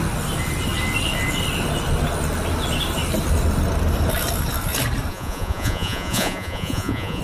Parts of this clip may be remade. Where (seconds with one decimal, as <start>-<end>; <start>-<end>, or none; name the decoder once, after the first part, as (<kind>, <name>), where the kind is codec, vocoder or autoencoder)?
5.1-7.2 (vocoder, Vocos)